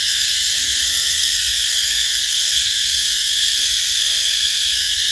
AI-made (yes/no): yes